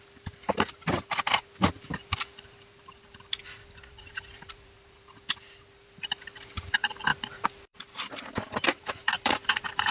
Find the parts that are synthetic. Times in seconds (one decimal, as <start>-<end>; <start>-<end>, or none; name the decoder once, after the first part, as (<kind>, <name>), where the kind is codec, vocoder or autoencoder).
0.0-9.9 (vocoder, BigVGAN v2)

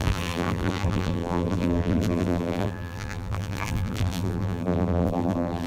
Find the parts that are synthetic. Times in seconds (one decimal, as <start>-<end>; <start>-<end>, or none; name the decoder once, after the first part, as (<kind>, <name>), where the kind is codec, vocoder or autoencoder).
0.0-5.7 (vocoder, BigVGAN v2)